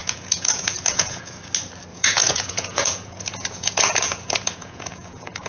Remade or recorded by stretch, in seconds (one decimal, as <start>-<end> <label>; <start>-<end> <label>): 0.0-1.4 remade; 1.4-1.9 recorded; 1.9-5.5 remade